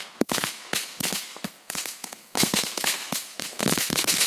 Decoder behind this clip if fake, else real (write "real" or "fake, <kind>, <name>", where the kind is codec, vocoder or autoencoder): fake, codec, SNAC